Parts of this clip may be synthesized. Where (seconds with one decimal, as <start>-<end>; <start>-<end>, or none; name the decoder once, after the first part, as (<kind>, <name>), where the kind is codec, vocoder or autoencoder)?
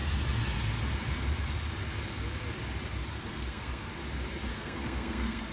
3.3-3.9 (codec, SNAC); 4.5-5.5